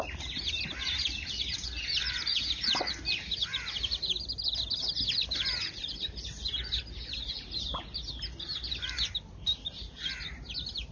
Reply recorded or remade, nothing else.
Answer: remade